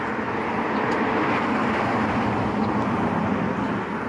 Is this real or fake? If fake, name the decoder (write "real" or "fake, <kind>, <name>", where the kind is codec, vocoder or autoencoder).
real